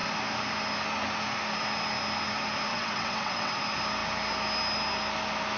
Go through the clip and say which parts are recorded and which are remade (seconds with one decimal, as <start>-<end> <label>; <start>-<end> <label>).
0.0-2.7 recorded; 2.7-3.5 remade; 3.5-5.6 recorded